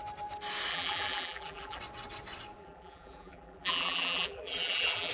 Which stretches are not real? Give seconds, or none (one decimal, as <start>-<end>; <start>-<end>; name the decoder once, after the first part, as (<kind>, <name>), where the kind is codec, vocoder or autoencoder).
0.7-1.8 (vocoder, BigVGAN v2); 2.6-5.1

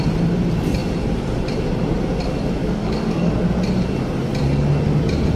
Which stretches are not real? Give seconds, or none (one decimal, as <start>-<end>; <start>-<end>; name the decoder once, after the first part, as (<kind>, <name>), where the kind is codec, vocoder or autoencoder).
2.6-3.3 (codec, DAC)

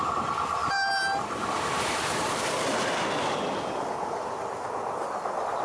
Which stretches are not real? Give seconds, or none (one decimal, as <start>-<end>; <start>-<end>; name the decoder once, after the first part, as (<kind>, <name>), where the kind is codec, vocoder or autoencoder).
0.6-2.6 (vocoder, BigVGAN v2)